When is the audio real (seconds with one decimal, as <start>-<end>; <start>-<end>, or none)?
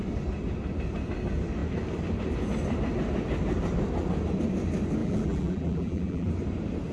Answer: 0.0-5.0; 6.3-6.9